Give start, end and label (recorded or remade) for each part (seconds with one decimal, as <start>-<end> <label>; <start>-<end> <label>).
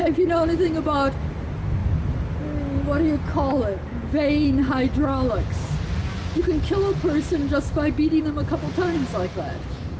0.0-10.0 recorded